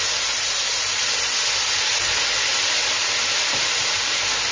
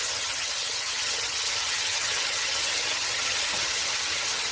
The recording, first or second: first